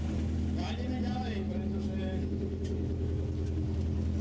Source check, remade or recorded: recorded